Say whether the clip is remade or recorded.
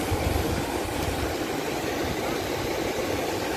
recorded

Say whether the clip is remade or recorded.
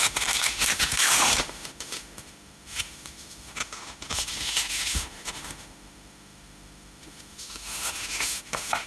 remade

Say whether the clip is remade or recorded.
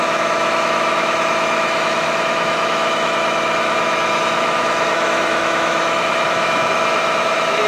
remade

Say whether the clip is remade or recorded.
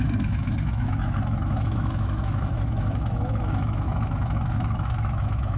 remade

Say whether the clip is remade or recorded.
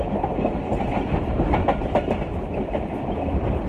recorded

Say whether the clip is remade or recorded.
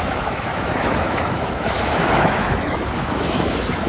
remade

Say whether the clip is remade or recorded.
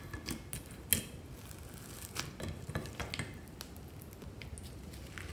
recorded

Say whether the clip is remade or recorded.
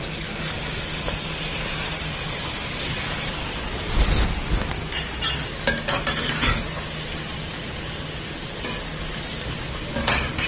recorded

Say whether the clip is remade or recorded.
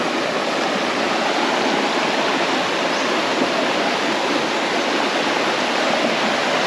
recorded